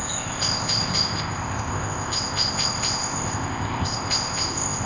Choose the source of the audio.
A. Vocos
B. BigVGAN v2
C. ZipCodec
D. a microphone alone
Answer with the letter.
C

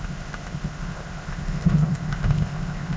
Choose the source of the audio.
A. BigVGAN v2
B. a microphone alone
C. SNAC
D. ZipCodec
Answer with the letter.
D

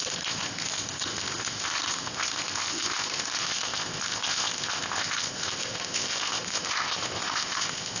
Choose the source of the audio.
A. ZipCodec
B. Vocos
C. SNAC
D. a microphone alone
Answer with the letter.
A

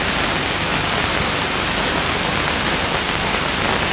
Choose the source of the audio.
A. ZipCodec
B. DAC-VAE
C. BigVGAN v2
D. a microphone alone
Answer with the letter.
D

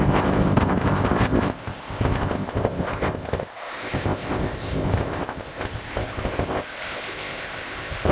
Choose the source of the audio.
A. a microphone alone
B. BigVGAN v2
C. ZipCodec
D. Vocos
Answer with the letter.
C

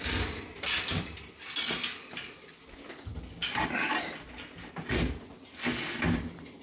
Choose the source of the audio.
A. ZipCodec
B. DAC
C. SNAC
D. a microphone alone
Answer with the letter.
D